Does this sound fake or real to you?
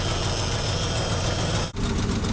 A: real